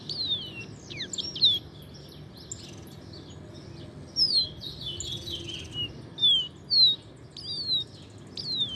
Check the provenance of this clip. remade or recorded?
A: recorded